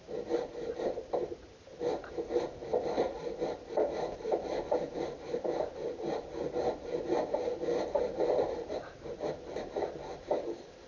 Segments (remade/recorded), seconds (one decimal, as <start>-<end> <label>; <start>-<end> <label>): 0.0-10.9 recorded